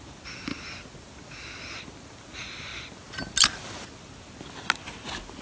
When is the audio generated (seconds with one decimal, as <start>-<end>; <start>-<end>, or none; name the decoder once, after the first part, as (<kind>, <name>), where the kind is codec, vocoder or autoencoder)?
none